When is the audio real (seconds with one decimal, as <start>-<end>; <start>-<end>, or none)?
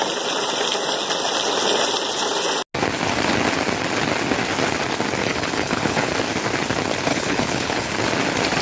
0.0-5.2; 6.1-7.1; 7.9-8.6